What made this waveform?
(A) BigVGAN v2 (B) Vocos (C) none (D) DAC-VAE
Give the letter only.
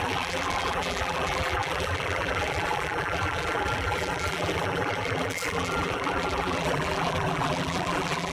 A